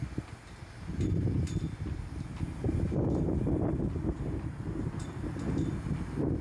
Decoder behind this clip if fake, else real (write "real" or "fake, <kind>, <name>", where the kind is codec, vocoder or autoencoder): real